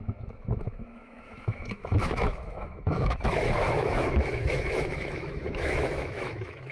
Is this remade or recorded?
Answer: remade